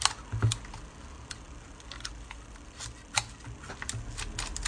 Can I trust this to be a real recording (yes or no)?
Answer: yes